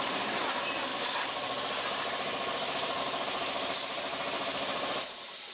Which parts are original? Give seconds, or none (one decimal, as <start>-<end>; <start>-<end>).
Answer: none